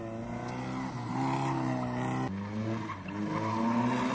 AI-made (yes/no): no